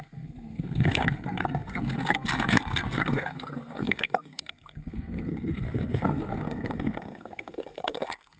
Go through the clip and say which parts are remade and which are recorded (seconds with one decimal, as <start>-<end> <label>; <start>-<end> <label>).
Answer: 0.0-8.4 remade